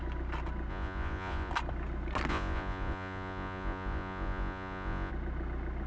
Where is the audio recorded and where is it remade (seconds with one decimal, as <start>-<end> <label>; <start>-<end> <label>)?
0.0-0.7 recorded; 0.7-1.5 remade; 1.5-2.3 recorded; 2.3-5.1 remade; 5.1-5.9 recorded